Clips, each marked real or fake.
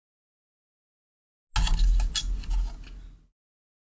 real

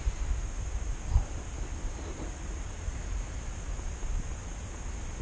real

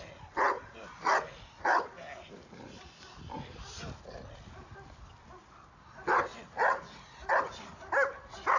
real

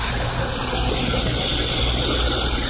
real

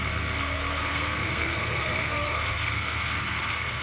fake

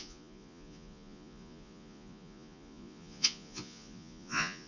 fake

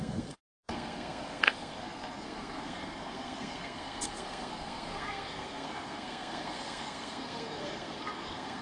fake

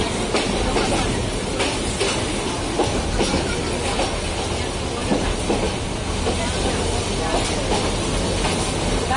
real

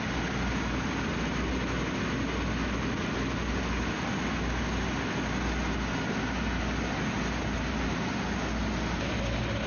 real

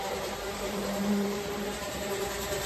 fake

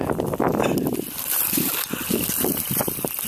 real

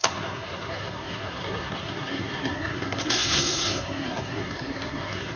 fake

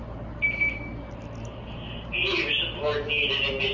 real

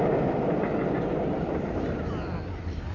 real